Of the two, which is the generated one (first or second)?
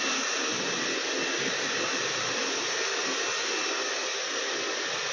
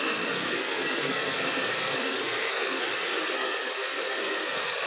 second